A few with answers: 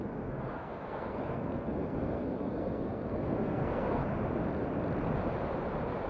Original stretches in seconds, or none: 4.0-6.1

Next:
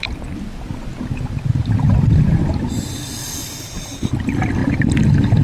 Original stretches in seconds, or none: 0.0-5.4

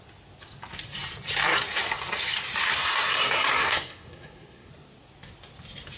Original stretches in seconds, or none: 0.0-3.6; 4.7-6.0